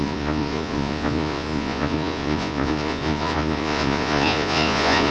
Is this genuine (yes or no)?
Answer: no